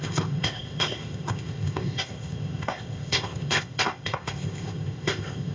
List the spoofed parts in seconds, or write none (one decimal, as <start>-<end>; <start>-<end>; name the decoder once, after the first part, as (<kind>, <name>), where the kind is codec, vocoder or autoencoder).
0.0-5.5 (codec, ZipCodec)